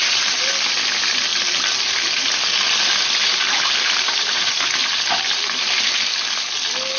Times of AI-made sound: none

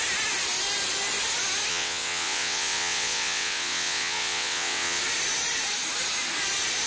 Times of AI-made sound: 1.7-5.0 (vocoder, WaveNeXt)